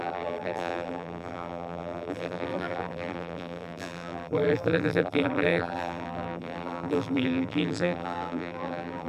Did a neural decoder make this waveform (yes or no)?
yes